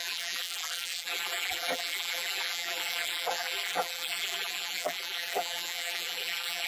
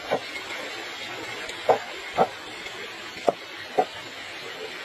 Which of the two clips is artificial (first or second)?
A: first